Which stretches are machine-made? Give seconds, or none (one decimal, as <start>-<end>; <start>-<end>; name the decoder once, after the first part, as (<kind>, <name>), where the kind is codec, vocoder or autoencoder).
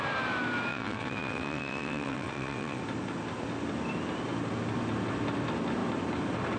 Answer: 0.7-2.8 (vocoder, WaveNeXt)